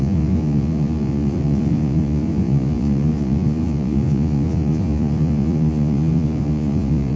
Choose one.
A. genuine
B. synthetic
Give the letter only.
B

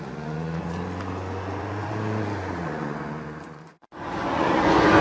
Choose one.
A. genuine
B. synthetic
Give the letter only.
B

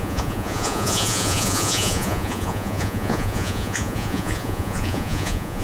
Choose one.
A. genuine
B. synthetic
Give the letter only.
B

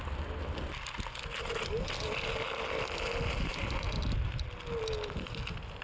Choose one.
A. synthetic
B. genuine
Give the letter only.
B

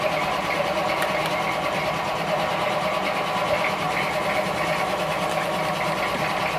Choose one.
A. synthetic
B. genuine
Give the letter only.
B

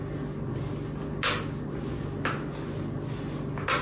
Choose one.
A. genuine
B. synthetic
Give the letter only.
A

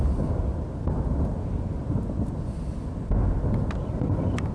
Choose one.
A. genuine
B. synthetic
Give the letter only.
A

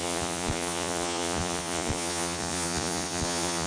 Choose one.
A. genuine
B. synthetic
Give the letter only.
B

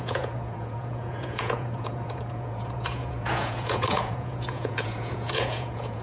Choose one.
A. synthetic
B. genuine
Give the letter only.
A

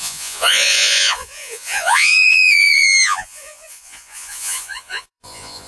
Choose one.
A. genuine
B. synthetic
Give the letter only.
B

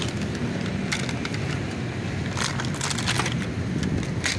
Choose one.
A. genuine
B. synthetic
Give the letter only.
A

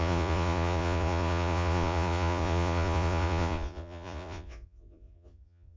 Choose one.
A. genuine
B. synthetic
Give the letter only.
B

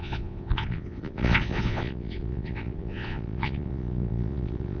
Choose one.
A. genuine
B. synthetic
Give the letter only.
B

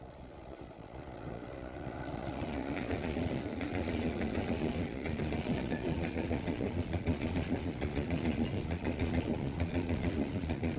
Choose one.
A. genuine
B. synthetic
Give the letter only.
B